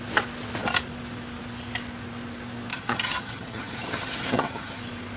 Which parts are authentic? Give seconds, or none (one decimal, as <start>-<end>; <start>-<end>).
0.0-2.7; 4.8-5.2